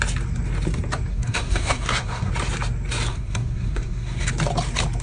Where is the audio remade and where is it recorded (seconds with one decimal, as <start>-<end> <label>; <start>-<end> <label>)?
0.0-1.1 recorded; 1.1-2.3 remade; 2.3-3.1 recorded; 3.1-4.3 remade; 4.3-5.0 recorded